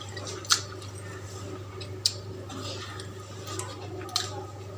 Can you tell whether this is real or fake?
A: real